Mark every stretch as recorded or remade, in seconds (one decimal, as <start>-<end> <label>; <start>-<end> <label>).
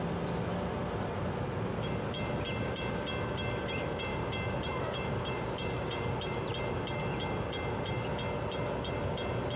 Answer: 0.0-4.1 recorded; 4.1-6.1 remade; 6.1-9.6 recorded